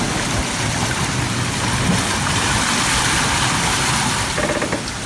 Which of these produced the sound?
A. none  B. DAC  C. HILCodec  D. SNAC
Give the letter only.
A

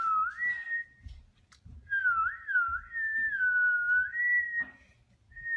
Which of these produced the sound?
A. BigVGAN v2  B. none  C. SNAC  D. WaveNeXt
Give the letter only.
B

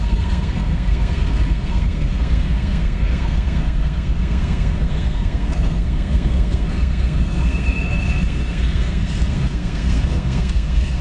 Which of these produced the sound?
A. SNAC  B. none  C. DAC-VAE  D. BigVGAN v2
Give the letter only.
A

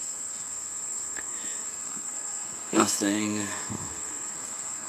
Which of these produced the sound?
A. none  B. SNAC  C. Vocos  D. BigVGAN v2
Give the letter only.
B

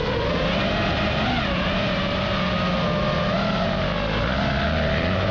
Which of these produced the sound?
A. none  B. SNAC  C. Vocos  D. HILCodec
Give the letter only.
A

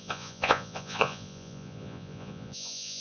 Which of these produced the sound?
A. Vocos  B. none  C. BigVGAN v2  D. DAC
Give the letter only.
A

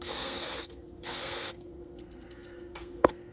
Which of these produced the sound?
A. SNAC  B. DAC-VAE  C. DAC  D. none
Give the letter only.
A